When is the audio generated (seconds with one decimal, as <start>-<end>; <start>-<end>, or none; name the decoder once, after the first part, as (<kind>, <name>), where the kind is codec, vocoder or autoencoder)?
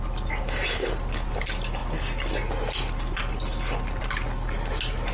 none